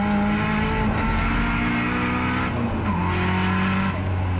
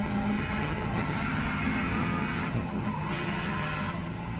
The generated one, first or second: second